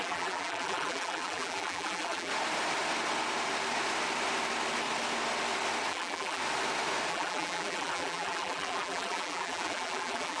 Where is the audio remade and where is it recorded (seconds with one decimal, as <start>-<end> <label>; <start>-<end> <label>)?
0.0-2.3 remade; 2.3-5.9 recorded; 5.9-6.4 remade; 6.4-7.1 recorded; 7.1-10.4 remade